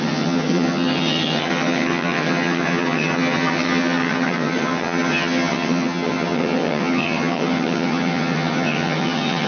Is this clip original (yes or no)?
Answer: no